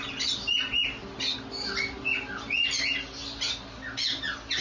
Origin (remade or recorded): recorded